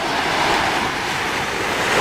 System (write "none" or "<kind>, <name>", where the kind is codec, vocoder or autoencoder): none